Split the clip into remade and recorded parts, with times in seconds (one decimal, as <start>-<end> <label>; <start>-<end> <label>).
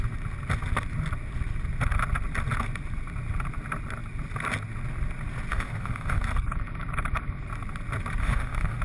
0.0-5.5 recorded; 5.5-6.2 remade; 6.2-8.2 recorded; 8.2-8.8 remade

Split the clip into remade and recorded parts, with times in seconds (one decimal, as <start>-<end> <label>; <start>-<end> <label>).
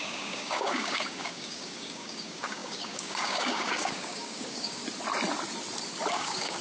0.0-4.8 remade; 4.8-6.1 recorded; 6.1-6.6 remade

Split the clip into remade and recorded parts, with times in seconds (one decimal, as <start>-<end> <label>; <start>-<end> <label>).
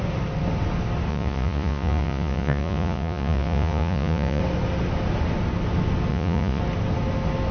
0.0-1.1 recorded; 1.1-4.4 remade; 4.4-6.1 recorded; 6.1-6.6 remade; 6.6-7.5 recorded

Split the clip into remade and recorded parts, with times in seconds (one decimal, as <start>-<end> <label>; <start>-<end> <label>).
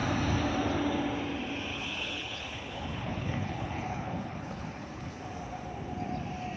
0.0-1.7 recorded; 1.7-5.2 remade; 5.2-6.6 recorded